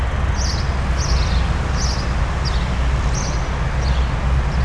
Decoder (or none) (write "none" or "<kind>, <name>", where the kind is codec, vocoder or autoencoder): none